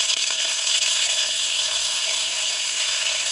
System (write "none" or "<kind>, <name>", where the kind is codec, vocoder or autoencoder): codec, SNAC